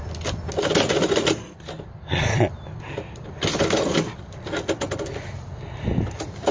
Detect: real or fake real